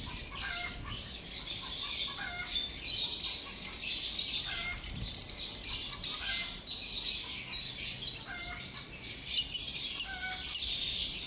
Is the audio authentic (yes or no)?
yes